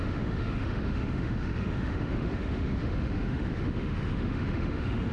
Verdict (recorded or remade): remade